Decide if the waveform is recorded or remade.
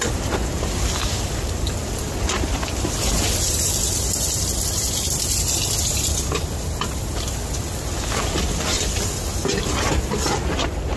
remade